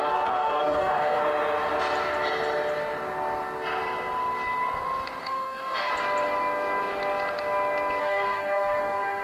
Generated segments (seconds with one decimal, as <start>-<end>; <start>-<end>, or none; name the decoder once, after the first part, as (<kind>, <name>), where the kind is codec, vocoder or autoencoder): 0.0-1.2 (codec, DAC); 5.2-5.9; 8.0-9.2